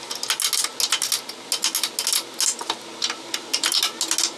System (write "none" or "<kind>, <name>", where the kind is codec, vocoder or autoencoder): none